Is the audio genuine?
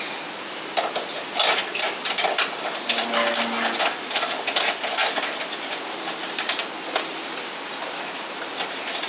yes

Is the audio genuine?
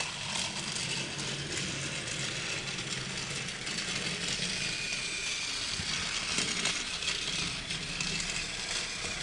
yes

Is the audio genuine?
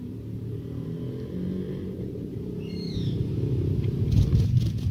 no